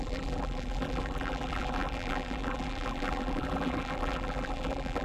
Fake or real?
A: fake